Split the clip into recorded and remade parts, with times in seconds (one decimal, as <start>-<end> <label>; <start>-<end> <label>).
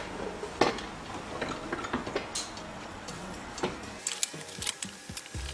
0.0-2.7 recorded; 2.7-3.5 remade; 3.5-5.5 recorded